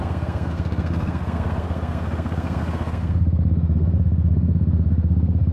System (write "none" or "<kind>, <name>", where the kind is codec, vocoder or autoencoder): codec, SNAC